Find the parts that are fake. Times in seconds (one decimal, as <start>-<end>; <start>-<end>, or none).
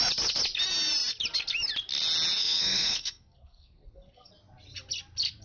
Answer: 2.4-4.3